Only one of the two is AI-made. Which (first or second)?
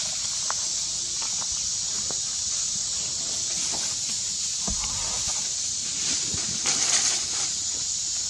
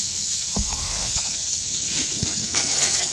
second